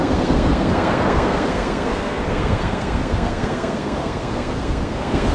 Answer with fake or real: fake